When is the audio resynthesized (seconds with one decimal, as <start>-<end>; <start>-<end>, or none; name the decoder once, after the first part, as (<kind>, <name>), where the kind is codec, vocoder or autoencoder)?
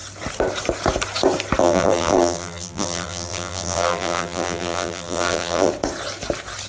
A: 1.6-5.7 (vocoder, BigVGAN v2)